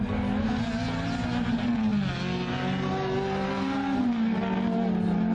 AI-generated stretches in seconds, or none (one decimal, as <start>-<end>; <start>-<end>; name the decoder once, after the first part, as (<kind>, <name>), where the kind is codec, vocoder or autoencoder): none